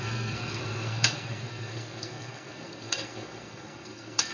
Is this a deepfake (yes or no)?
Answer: yes